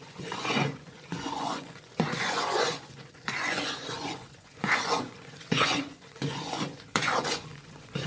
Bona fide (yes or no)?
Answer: no